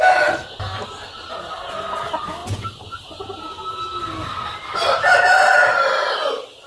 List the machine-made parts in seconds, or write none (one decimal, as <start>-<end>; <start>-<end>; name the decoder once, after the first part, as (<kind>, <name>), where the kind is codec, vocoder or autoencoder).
none